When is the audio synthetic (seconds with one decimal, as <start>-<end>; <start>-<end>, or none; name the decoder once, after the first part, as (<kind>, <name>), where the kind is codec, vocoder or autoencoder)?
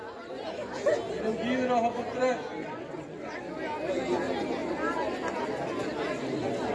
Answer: 2.6-3.4 (vocoder, WaveNeXt)